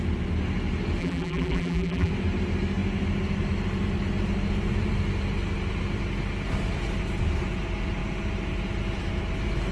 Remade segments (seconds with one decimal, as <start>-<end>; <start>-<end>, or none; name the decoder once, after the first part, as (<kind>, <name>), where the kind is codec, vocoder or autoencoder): 1.0-2.1 (vocoder, BigVGAN v2)